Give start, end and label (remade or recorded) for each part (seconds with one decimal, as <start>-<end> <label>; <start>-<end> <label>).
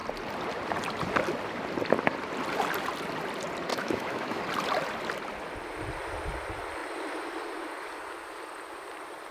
0.0-3.7 recorded; 3.7-4.4 remade; 4.4-9.3 recorded